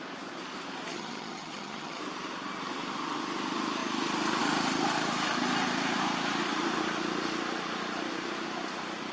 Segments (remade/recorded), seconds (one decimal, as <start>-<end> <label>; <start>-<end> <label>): 0.0-0.9 recorded; 0.9-2.0 remade; 2.0-9.1 recorded